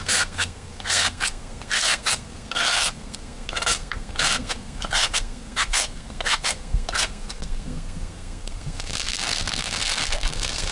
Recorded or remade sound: remade